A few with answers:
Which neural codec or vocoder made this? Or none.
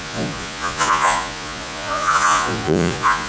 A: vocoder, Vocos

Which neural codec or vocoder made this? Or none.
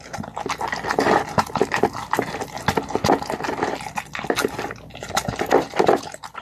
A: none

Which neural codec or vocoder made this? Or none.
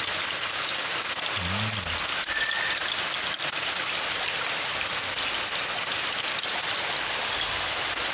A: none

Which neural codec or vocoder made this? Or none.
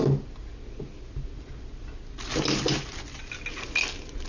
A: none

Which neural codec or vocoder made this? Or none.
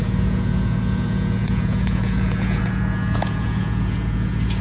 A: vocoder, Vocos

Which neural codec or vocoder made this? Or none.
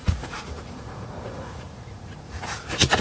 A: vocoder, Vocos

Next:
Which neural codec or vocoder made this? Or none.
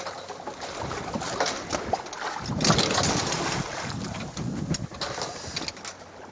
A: none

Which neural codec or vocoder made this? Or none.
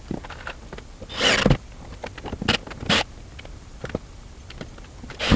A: none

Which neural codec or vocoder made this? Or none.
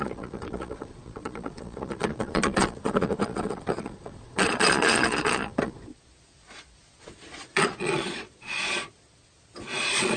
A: vocoder, Vocos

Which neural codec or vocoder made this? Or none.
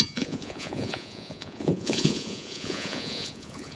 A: vocoder, Vocos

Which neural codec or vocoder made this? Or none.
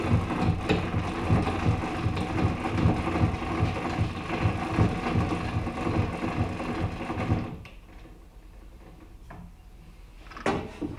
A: none